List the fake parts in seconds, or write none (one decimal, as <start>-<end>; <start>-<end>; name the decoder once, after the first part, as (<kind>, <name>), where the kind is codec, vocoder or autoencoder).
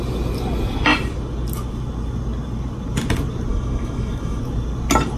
3.5-4.4 (autoencoder, DAC-VAE)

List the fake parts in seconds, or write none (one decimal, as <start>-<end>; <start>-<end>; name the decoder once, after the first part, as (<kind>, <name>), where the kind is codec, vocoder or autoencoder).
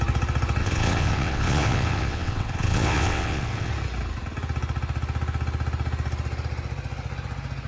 0.6-3.7 (vocoder, WaveNeXt)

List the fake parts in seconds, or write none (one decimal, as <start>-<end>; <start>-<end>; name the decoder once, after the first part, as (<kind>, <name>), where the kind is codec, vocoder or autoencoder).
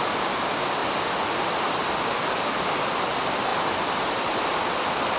none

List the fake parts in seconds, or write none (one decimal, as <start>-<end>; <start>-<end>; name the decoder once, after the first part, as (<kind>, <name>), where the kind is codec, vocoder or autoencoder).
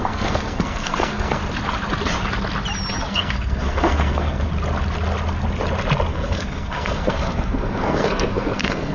0.0-1.4 (codec, SNAC); 3.0-4.5; 6.1-8.9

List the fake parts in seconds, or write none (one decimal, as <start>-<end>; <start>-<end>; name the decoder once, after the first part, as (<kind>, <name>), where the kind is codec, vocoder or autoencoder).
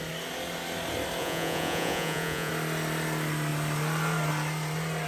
1.2-2.5 (vocoder, Vocos)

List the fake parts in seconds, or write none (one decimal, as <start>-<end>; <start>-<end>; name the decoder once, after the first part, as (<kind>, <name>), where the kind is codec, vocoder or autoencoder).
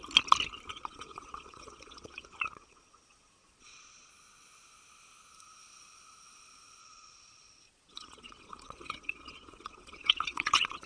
0.7-4.1 (vocoder, Vocos); 6.8-10.9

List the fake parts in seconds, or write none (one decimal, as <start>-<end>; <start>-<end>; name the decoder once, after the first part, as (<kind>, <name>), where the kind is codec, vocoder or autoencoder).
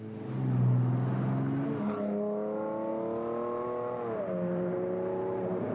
none